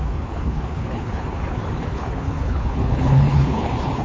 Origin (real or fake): fake